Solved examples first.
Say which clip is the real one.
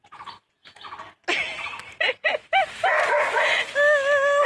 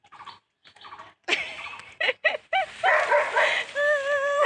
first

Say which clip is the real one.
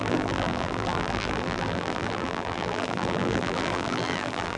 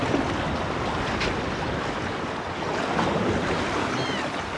second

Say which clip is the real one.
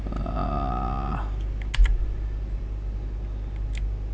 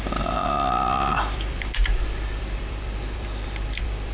first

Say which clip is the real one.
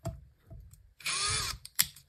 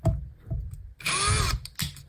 second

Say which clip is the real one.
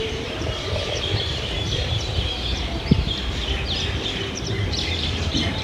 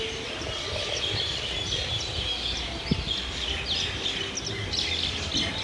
second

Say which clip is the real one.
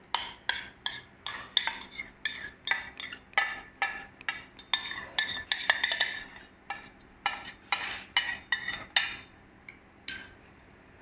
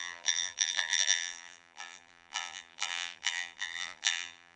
first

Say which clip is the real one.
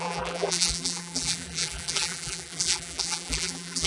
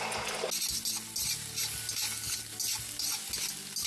second